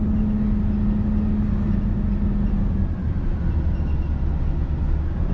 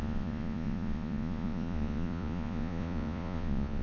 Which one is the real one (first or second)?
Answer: first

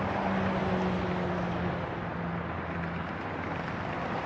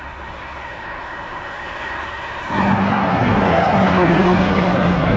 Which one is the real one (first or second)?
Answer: first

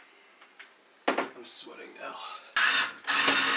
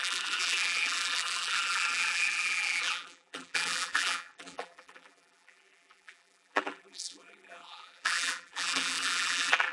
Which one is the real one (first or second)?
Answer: first